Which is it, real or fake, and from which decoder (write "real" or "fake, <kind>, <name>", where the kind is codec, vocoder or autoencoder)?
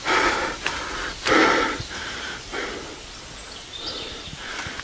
real